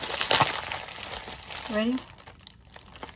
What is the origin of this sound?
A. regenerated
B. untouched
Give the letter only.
B